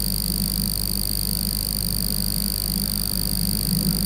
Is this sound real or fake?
real